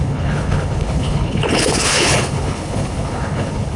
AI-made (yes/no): yes